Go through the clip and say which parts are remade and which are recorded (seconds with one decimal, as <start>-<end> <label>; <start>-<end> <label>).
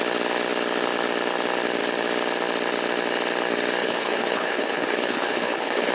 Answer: 0.0-3.8 recorded; 3.8-5.9 remade